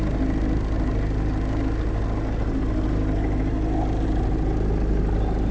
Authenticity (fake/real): real